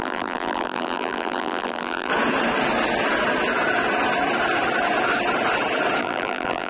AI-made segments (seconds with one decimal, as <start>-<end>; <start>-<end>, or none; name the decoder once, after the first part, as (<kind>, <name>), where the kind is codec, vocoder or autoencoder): 0.0-2.1 (vocoder, BigVGAN v2); 6.0-6.7